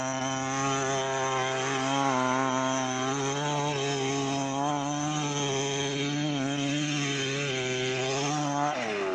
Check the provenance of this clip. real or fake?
real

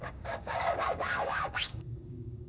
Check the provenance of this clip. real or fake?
fake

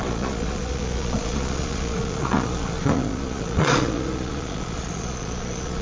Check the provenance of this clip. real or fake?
fake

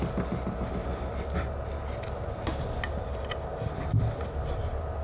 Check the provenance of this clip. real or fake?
real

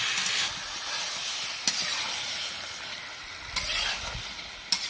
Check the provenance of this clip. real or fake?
real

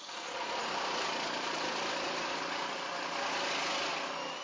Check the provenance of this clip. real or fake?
real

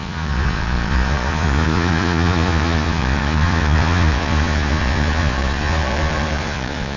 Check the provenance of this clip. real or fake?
fake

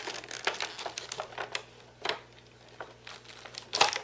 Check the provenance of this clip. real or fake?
real